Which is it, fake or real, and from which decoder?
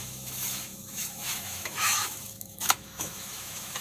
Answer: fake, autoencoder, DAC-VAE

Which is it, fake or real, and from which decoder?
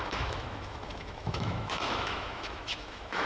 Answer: fake, autoencoder, DAC-VAE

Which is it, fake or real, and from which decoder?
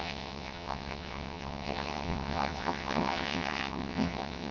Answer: fake, vocoder, WaveNeXt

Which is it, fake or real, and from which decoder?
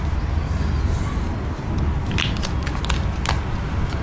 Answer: real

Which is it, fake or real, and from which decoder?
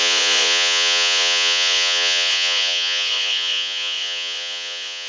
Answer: fake, vocoder, Vocos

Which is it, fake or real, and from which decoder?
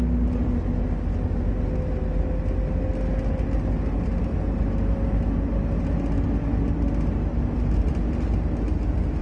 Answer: real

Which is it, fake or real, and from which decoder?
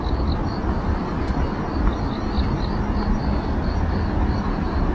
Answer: real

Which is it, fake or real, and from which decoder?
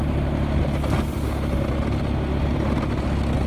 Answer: real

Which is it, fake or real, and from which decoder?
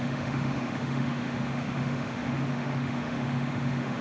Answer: fake, autoencoder, DAC-VAE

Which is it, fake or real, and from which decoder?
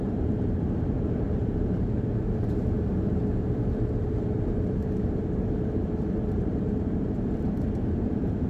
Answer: fake, vocoder, BigVGAN v2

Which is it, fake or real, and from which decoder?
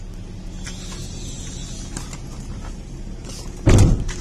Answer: real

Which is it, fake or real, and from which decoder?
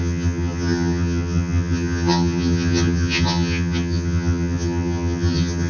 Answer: fake, vocoder, HiFi-GAN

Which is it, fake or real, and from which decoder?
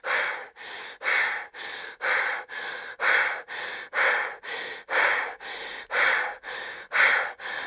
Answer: real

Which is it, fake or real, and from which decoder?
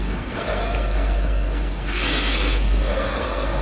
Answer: fake, codec, SNAC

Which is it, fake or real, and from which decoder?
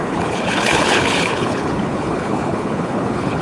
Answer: fake, codec, HILCodec